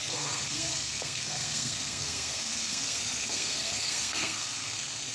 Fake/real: fake